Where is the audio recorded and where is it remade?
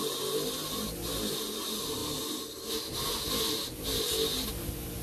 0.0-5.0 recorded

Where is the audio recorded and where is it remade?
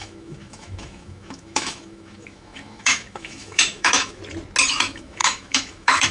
0.0-4.2 remade; 4.2-4.7 recorded; 4.7-6.1 remade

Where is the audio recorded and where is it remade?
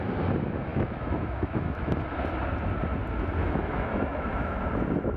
0.0-0.7 recorded; 0.7-2.0 remade; 2.0-3.4 recorded; 3.4-4.6 remade; 4.6-5.2 recorded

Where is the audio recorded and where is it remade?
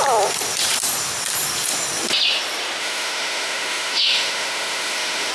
0.0-2.8 recorded; 2.8-5.3 remade